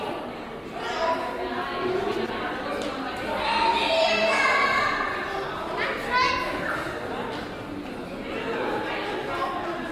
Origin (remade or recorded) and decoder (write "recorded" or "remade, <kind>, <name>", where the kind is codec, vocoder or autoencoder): recorded